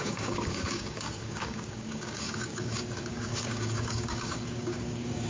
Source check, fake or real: fake